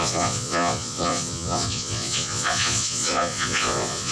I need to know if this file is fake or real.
fake